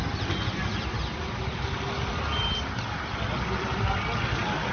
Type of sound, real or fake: real